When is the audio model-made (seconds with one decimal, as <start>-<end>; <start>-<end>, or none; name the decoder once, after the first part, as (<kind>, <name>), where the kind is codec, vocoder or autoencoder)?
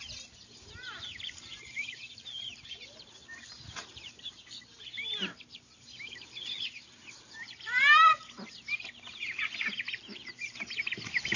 0.0-11.4 (vocoder, BigVGAN v2)